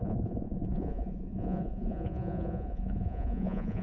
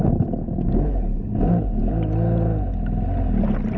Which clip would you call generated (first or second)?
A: first